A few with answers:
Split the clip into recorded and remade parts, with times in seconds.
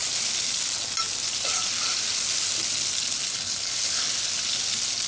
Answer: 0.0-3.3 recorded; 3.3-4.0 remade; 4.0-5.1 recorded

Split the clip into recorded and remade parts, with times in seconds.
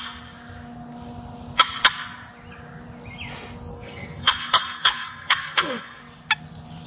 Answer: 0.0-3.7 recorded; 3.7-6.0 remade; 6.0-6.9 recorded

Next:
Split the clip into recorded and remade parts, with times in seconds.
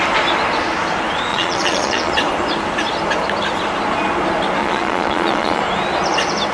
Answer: 0.0-1.3 recorded; 1.3-2.1 remade; 2.1-4.6 recorded; 4.6-5.6 remade; 5.6-6.5 recorded